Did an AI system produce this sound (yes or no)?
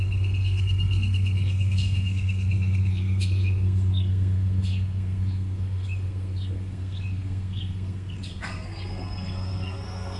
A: yes